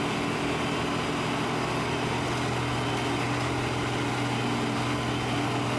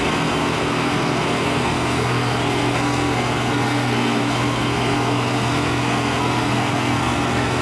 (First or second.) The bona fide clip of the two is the first